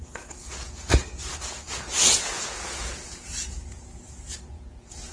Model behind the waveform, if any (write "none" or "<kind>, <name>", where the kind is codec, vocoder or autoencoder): vocoder, Vocos